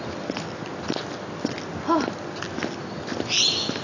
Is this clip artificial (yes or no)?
no